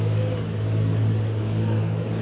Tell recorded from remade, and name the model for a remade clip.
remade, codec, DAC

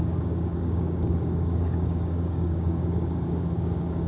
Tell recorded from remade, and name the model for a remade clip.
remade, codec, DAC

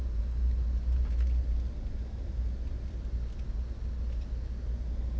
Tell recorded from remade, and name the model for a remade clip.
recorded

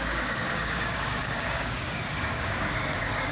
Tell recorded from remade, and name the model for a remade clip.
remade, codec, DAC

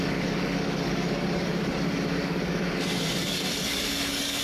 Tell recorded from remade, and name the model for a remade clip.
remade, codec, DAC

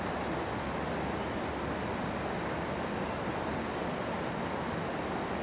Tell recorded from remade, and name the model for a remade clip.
recorded